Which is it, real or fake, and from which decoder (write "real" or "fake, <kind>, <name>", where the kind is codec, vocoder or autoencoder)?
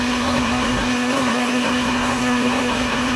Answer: fake, codec, SNAC